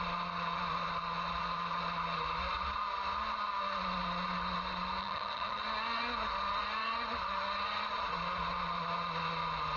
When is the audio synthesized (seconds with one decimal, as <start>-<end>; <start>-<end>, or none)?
5.0-5.6